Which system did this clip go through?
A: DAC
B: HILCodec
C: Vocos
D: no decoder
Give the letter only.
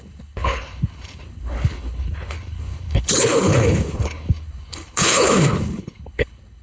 B